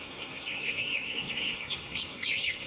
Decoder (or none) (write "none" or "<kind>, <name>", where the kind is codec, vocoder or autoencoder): codec, SNAC